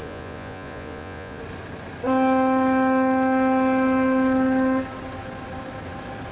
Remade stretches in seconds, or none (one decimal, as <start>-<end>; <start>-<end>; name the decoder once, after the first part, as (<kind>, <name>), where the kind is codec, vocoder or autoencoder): 0.0-1.4 (vocoder, Vocos)